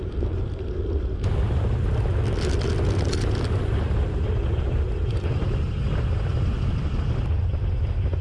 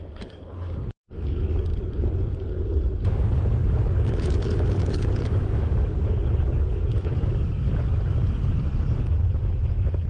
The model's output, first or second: second